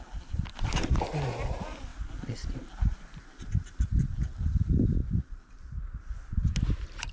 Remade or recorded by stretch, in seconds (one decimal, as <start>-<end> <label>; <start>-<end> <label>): 0.0-5.0 recorded; 5.0-5.8 remade; 5.8-7.1 recorded